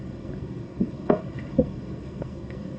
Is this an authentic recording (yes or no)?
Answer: no